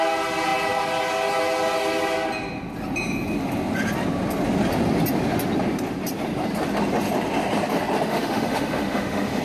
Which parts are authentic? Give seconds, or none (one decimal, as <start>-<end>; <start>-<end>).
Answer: 0.0-8.1